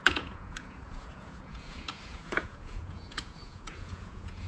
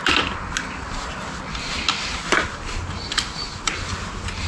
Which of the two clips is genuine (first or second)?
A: second